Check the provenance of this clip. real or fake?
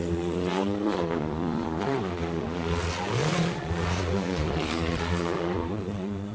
fake